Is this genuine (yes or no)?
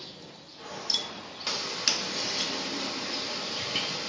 yes